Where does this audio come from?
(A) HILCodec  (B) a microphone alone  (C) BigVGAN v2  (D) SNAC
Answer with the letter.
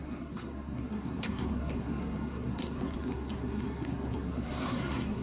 D